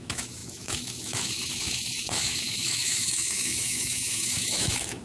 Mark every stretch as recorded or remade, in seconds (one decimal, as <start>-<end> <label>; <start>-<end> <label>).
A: 0.0-5.0 remade